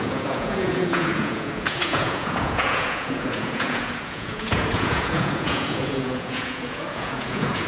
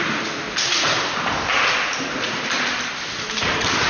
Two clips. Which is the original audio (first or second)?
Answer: second